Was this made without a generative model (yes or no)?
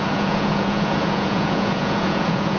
no